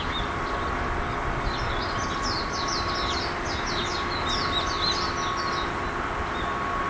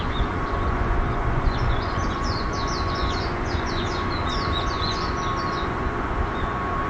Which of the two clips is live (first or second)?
first